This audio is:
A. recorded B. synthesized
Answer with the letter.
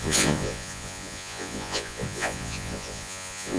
B